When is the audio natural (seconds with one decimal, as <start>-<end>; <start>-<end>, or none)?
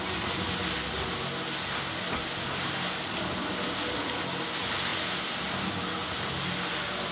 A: 0.0-7.1